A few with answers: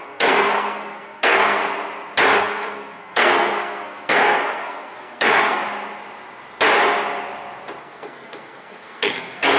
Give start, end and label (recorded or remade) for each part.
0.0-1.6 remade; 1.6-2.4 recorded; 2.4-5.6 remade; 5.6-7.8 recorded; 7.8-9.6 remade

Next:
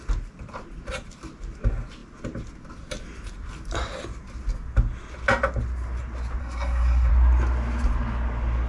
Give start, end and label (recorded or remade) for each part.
0.0-6.4 recorded; 6.4-7.1 remade; 7.1-8.7 recorded

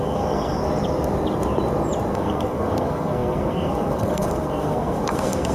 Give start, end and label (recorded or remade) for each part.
0.0-0.6 remade; 0.6-2.1 recorded; 2.1-5.5 remade

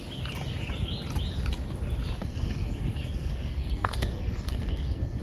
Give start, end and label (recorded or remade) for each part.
0.0-2.2 recorded; 2.2-5.2 remade

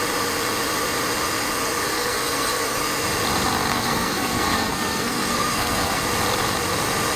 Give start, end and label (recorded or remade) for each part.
0.0-1.9 recorded; 1.9-2.8 remade; 2.8-3.7 recorded; 3.7-6.0 remade; 6.0-7.2 recorded

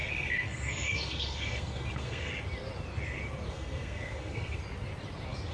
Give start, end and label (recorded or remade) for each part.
0.0-2.3 remade; 2.3-3.5 recorded; 3.5-4.6 remade; 4.6-5.5 recorded